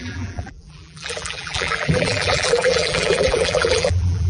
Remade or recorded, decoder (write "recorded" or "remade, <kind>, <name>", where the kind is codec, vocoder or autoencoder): remade, vocoder, BigVGAN v2